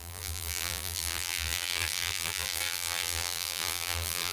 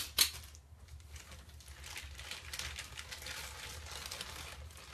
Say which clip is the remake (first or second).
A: first